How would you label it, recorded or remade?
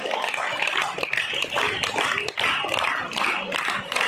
recorded